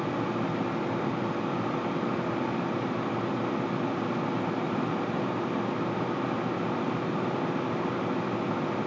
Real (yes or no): yes